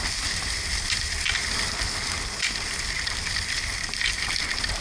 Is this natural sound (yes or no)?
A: yes